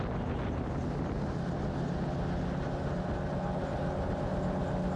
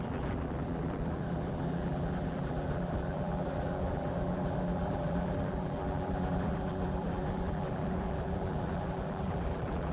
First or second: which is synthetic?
second